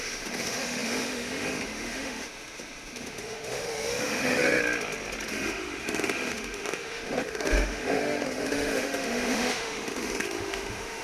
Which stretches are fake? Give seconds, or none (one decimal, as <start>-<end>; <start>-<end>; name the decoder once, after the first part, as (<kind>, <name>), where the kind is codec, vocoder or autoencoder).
0.0-4.6 (autoencoder, DAC-VAE); 5.3-11.0